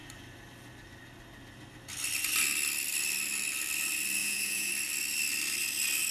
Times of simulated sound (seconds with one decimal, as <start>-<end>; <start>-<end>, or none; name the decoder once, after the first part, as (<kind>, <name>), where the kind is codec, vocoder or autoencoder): 4.2-4.7 (vocoder, Vocos)